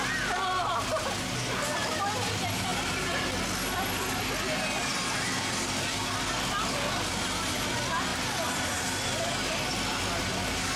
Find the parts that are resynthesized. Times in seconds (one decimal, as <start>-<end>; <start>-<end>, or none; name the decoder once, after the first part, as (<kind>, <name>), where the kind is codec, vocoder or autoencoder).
7.1-7.6 (vocoder, BigVGAN v2); 8.1-8.7